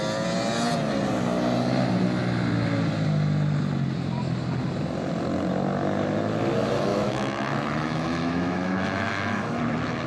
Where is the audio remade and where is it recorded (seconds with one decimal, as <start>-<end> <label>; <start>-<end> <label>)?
0.0-6.9 recorded; 6.9-9.6 remade; 9.6-10.1 recorded